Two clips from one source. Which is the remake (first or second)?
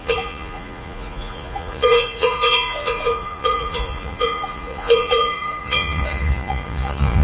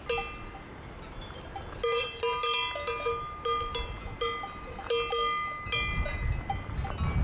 first